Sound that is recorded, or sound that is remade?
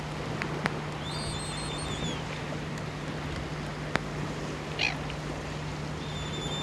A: recorded